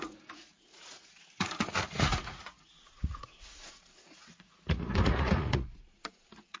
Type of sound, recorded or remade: remade